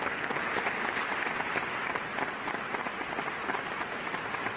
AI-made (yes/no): no